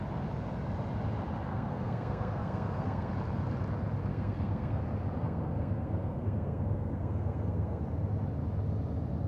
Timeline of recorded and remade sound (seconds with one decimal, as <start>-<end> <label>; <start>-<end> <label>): 0.0-1.5 recorded; 1.5-3.1 remade; 3.1-4.1 recorded; 4.1-4.8 remade; 4.8-5.2 recorded; 5.2-7.8 remade; 7.8-9.3 recorded